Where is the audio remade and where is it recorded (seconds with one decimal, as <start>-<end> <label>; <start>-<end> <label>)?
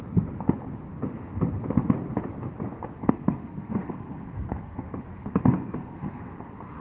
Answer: 0.0-3.0 recorded; 3.0-6.2 remade; 6.2-6.8 recorded